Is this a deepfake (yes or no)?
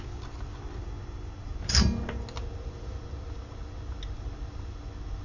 no